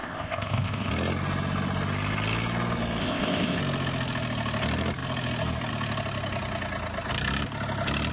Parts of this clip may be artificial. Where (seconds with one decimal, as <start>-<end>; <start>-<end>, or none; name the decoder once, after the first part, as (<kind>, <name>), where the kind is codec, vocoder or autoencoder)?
0.0-0.9 (codec, ZipCodec); 3.0-3.6